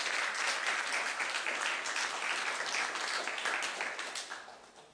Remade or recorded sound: recorded